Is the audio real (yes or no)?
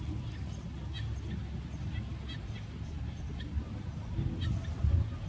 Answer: yes